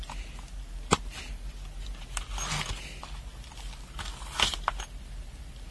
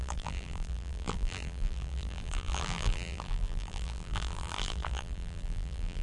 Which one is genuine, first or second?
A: first